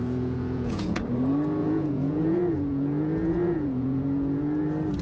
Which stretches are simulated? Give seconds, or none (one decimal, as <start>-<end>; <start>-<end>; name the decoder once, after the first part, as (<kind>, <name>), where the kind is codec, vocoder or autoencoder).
0.0-1.0 (vocoder, Vocos); 1.6-4.6